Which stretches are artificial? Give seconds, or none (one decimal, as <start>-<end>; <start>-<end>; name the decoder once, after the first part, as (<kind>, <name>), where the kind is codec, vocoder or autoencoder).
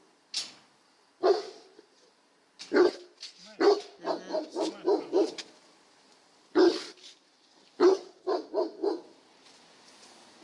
none